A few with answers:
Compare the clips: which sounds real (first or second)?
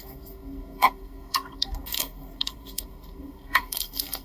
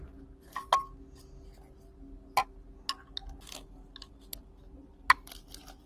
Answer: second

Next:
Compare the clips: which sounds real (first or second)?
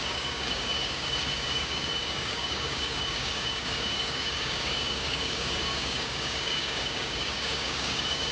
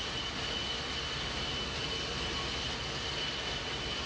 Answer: second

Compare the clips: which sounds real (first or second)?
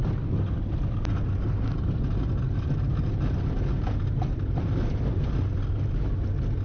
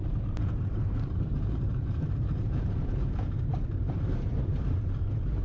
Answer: first